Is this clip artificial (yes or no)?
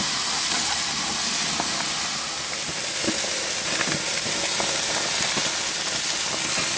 no